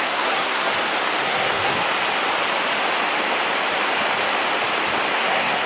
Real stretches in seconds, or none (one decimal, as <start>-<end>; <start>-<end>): 0.7-1.2; 1.7-5.1